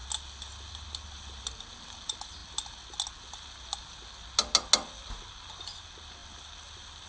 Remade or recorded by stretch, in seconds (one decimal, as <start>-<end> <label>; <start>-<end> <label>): 0.0-7.1 recorded